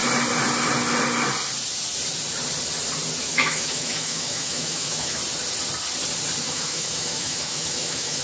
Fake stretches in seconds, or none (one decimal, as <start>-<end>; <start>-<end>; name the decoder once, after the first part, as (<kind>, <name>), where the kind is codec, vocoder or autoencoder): 3.2-5.2 (autoencoder, DAC-VAE); 6.4-8.2